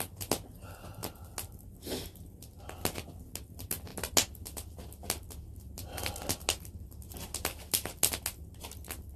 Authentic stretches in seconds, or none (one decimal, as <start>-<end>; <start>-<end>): 0.0-9.2